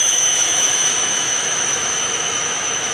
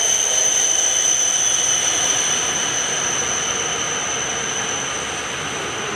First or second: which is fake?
first